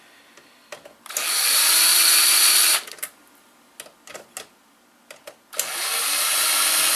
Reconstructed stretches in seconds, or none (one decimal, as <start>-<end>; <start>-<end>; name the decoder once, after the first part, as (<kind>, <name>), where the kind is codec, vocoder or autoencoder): 1.9-3.3 (vocoder, BigVGAN v2)